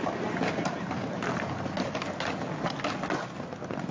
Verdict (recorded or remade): recorded